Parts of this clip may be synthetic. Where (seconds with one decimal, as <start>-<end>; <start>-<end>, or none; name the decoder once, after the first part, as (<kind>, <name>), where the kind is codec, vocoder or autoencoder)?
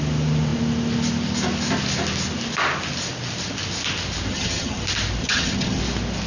4.3-4.8 (vocoder, HiFi-GAN); 5.2-5.8